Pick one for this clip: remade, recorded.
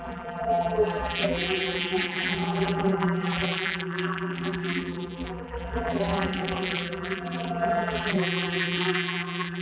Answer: remade